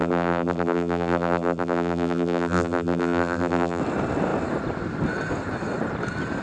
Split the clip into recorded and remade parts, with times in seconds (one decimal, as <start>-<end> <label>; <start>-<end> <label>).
0.0-3.8 remade; 3.8-6.4 recorded